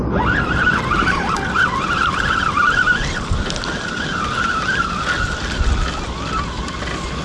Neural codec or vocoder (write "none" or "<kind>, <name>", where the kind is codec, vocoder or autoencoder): none